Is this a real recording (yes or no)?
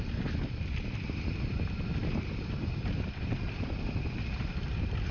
yes